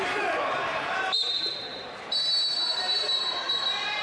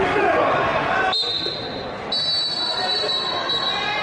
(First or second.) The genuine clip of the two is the second